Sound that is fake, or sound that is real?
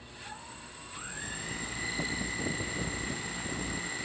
real